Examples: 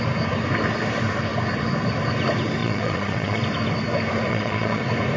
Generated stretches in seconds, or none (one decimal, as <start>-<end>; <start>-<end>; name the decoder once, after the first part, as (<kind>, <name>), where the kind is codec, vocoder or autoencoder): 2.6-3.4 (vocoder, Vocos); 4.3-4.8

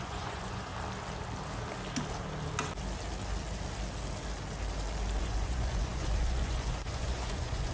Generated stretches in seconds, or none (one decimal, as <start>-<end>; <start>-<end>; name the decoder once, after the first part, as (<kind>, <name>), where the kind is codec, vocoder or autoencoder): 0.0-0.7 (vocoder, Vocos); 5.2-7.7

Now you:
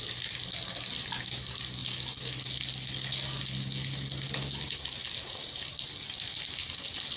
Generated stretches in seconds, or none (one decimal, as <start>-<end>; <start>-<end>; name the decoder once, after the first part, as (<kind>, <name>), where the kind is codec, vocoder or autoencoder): none